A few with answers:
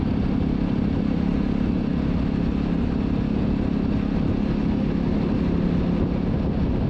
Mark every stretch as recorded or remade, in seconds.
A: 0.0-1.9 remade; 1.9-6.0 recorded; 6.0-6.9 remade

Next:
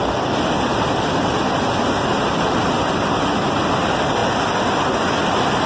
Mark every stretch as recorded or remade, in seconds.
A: 0.0-0.7 recorded; 0.7-1.8 remade; 1.8-4.2 recorded; 4.2-4.7 remade; 4.7-5.7 recorded

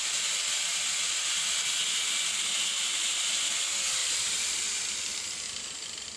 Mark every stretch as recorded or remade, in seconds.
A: 0.0-2.6 recorded; 2.6-3.3 remade; 3.3-4.0 recorded; 4.0-4.8 remade; 4.8-6.2 recorded

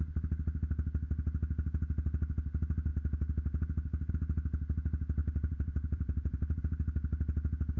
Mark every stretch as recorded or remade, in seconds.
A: 0.0-5.2 recorded; 5.2-6.6 remade; 6.6-7.8 recorded